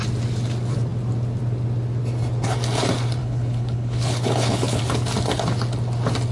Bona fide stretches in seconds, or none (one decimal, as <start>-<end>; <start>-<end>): 0.0-3.2; 4.8-6.3